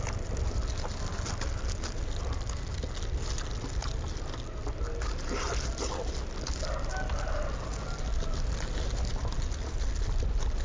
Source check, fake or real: real